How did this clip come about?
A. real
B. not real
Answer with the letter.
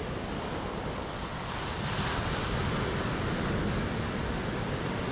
A